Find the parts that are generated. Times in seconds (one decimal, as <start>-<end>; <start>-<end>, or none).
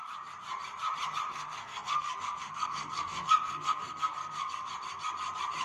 1.3-4.7